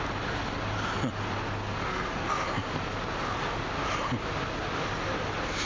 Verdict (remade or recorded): recorded